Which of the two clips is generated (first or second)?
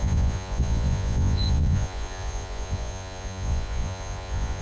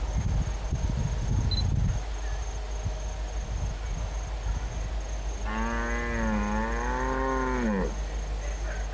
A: first